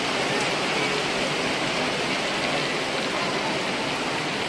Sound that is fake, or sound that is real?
real